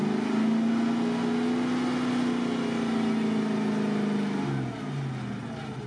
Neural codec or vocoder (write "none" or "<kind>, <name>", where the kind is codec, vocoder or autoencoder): none